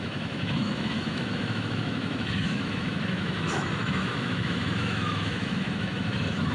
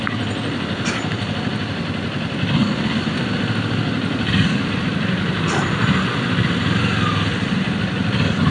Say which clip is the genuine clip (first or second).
second